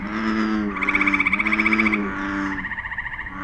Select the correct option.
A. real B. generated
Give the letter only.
A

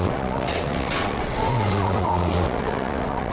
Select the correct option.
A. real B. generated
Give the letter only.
B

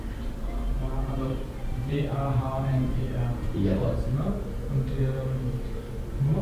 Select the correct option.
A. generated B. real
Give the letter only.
A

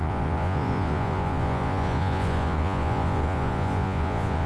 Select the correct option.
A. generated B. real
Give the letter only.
A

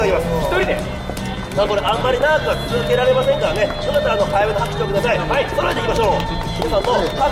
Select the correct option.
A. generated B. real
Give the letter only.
B